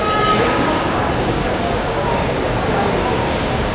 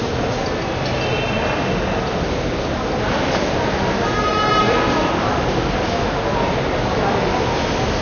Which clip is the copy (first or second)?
first